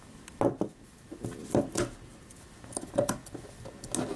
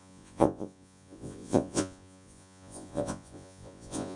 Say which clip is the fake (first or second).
second